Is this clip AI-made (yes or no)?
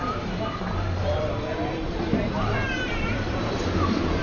yes